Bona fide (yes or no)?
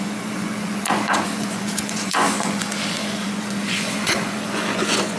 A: no